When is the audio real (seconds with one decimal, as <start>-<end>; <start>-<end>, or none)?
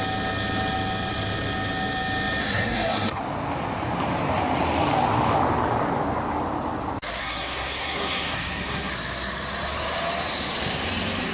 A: 0.0-2.4; 3.2-7.2; 8.9-11.3